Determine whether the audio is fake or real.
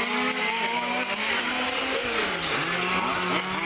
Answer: real